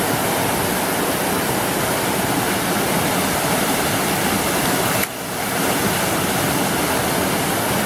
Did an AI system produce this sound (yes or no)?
no